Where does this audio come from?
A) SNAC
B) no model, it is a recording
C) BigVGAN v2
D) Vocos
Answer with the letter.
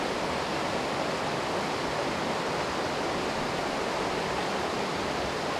B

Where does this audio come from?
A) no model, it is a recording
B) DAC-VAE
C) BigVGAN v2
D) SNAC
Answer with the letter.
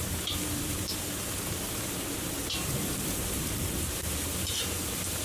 C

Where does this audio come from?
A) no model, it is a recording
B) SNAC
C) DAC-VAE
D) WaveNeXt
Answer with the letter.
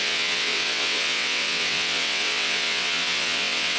D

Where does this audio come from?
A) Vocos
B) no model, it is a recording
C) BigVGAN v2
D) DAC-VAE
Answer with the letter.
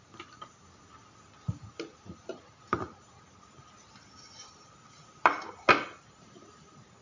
B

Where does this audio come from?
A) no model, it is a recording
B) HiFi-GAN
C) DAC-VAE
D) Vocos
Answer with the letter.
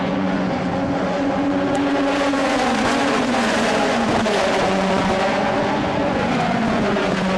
D